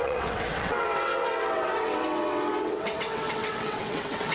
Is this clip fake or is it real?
fake